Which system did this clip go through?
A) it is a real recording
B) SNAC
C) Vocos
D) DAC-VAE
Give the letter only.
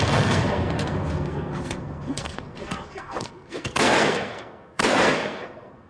B